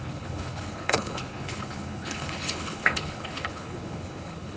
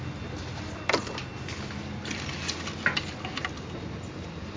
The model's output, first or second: first